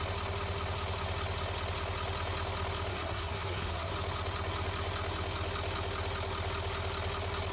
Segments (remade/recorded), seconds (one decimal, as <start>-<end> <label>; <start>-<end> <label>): 0.0-2.9 recorded; 2.9-3.9 remade; 3.9-7.5 recorded